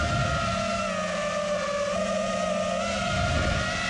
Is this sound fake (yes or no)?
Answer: no